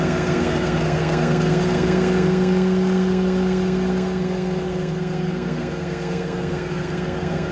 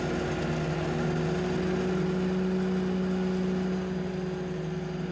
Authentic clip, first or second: second